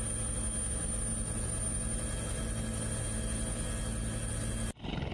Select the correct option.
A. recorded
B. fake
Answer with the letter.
A